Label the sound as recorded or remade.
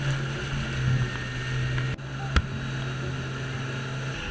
recorded